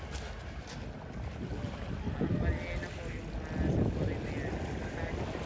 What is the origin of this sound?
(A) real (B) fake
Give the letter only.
A